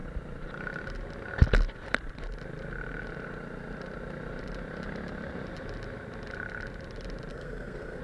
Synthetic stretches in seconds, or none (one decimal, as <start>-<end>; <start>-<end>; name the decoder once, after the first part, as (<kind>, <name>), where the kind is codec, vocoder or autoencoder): 7.3-8.0 (codec, SNAC)

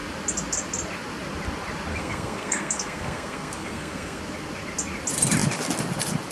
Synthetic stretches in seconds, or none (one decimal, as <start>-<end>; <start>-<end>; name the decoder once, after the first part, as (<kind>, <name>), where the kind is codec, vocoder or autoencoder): 1.9-4.2 (codec, SNAC)

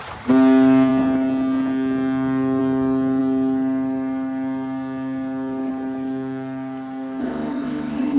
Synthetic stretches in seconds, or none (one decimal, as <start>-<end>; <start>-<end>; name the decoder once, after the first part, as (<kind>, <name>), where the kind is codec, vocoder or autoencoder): 7.2-8.2 (codec, ZipCodec)

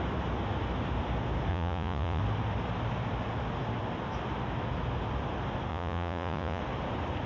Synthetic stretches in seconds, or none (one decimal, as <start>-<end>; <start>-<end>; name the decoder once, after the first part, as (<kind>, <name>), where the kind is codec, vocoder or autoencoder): 1.5-2.2 (vocoder, Vocos); 5.7-6.6

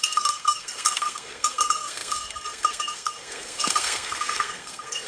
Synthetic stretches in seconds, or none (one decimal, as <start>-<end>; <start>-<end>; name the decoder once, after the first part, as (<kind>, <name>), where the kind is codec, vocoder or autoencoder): 0.0-5.1 (codec, SNAC)

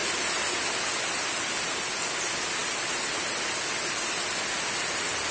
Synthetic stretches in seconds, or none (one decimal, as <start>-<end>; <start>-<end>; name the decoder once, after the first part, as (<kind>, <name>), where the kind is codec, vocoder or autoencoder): none

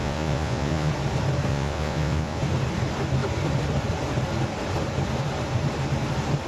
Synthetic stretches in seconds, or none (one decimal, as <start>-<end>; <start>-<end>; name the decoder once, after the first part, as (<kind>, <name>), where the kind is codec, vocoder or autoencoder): 0.0-0.9 (vocoder, Vocos); 1.5-2.4